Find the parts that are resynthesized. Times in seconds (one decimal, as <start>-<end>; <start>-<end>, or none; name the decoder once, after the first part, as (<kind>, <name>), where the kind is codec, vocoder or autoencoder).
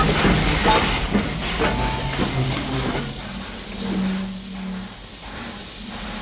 2.0-3.3 (codec, DAC)